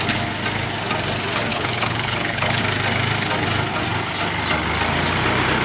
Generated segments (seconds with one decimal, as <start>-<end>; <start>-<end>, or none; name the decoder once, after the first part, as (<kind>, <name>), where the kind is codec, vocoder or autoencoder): 1.5-2.6 (codec, HILCodec)